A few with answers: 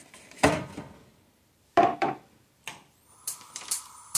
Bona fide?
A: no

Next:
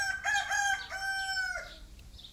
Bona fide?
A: yes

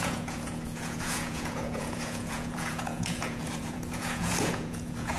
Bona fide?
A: no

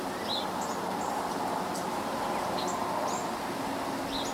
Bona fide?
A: yes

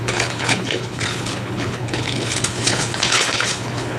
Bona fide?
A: no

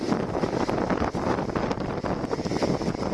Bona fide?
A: no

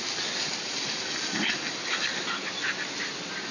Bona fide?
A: yes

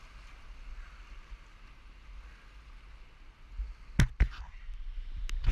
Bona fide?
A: yes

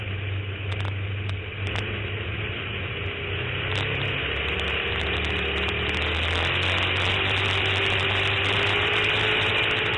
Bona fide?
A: yes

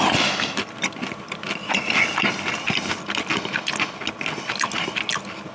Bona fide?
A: yes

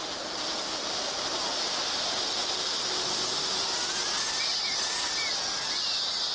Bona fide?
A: yes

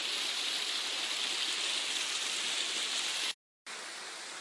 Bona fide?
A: yes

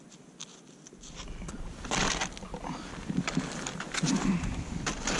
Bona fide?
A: yes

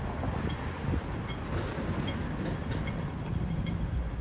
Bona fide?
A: yes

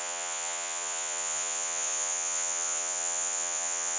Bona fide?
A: no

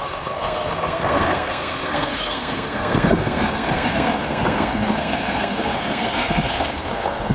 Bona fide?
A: no